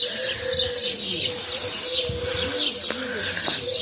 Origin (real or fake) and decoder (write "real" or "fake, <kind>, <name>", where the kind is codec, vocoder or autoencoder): real